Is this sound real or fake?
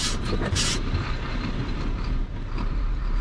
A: fake